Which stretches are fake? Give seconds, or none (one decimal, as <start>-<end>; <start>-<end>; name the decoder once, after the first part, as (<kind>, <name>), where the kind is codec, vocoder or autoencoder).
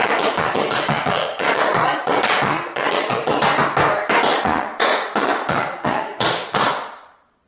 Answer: 0.0-3.4 (vocoder, Vocos); 4.3-7.5